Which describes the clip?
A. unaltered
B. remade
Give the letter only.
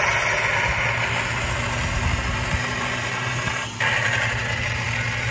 A